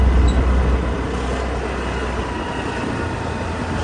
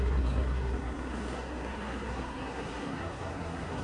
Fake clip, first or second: second